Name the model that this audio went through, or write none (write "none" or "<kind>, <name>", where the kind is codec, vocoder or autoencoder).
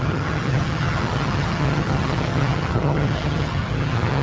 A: vocoder, HiFi-GAN